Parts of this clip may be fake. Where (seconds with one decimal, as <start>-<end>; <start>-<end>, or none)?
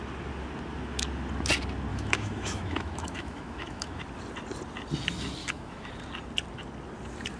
1.9-4.0; 5.4-5.9